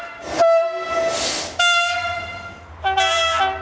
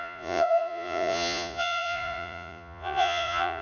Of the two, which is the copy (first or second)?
second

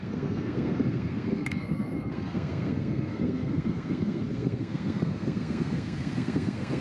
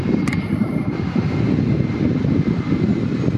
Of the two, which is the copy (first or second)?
first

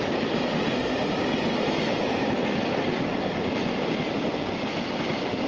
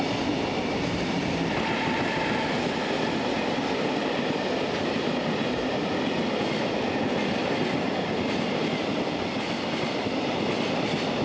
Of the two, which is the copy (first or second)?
second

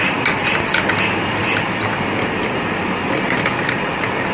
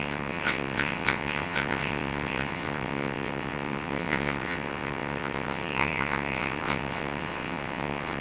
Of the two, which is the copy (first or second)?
second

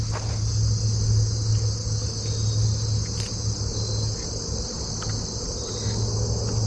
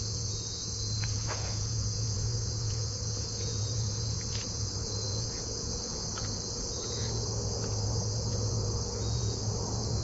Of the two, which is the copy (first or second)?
second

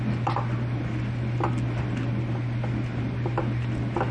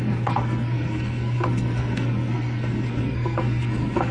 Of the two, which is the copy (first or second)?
second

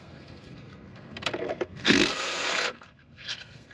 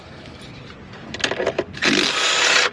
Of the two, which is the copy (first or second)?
first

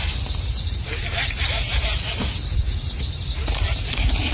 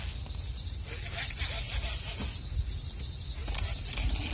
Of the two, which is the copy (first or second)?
first